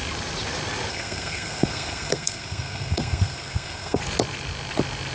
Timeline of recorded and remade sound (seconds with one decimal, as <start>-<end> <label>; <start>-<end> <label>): 0.0-0.9 recorded; 0.9-4.0 remade; 4.0-5.1 recorded